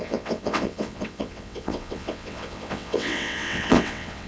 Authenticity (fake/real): fake